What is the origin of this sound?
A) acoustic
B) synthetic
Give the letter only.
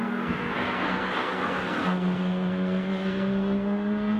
B